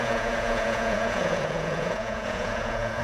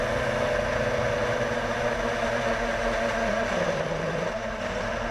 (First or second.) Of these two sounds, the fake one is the first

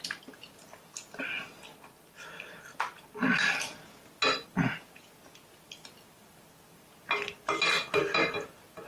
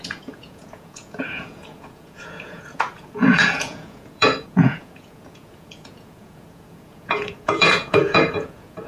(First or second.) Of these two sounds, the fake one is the second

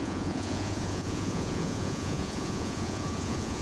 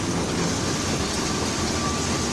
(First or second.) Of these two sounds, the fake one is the first